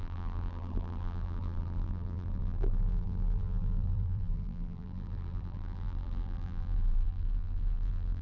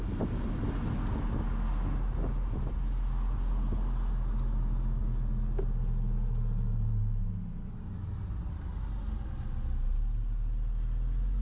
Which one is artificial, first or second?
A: first